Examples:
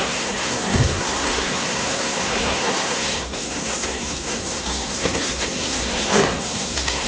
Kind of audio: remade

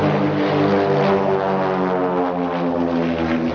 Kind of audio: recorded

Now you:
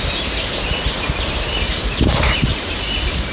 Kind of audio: recorded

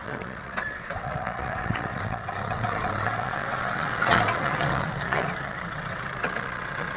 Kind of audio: remade